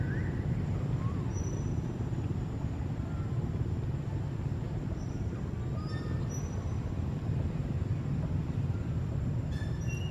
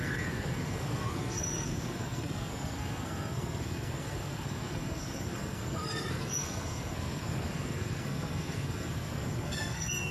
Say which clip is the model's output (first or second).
second